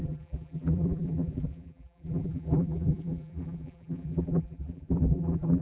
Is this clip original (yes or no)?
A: no